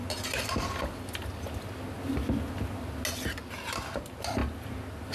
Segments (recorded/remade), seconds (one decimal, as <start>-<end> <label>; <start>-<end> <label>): 0.0-5.1 recorded